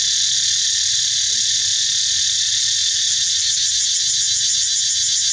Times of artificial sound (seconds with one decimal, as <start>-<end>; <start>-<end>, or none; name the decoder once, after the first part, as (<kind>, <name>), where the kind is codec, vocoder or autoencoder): none